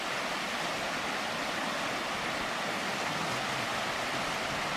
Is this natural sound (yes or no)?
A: yes